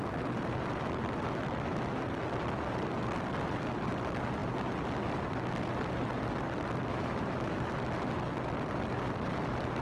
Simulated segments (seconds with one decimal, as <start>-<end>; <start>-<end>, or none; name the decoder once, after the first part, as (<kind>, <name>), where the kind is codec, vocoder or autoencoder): 6.9-7.7 (autoencoder, DAC-VAE)